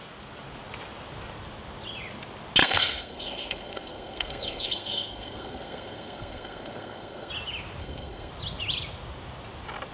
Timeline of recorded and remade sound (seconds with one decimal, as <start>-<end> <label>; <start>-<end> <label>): 0.0-2.6 recorded; 2.6-7.3 remade; 7.3-7.8 recorded; 7.8-8.3 remade; 8.3-9.9 recorded